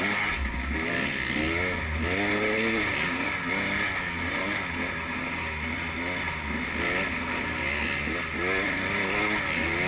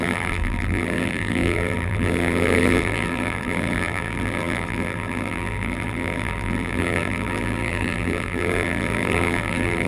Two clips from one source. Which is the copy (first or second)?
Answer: second